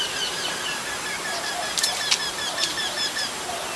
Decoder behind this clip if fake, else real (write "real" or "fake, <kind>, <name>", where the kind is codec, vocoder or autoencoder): fake, vocoder, BigVGAN v2